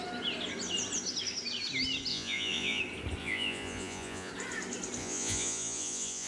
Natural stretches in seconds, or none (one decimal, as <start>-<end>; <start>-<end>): 0.0-2.1; 2.8-3.2; 4.3-5.0